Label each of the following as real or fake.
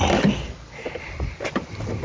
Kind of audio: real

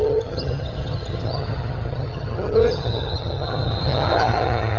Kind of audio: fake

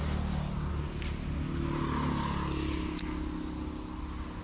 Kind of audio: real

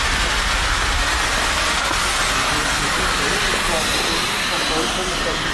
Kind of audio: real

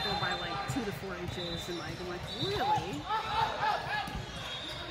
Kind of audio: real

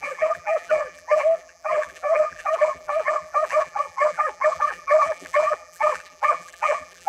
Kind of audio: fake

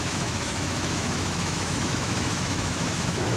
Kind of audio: fake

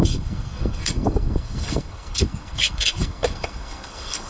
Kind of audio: fake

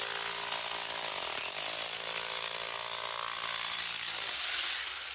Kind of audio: real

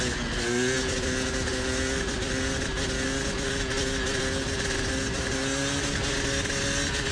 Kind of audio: real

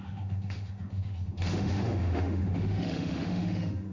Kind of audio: fake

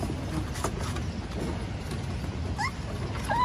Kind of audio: real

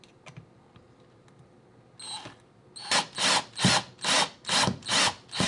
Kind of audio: real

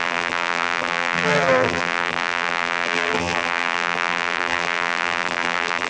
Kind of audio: fake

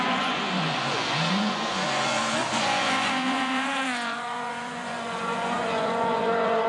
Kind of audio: fake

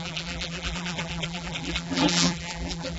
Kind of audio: fake